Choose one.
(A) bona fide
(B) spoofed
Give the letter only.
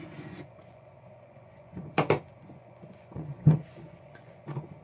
B